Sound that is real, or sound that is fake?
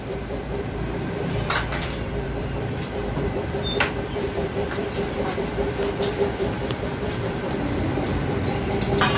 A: fake